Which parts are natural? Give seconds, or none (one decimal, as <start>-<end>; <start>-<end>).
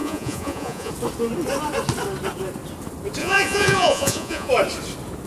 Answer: 0.9-3.2; 4.5-5.3